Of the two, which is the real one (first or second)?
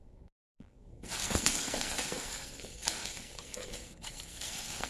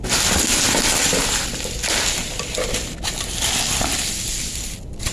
second